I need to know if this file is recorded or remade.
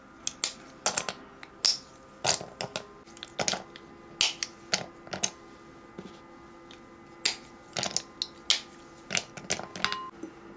recorded